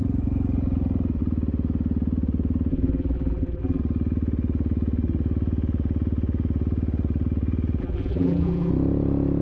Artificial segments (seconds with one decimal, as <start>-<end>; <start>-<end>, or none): 2.7-3.8; 7.8-8.7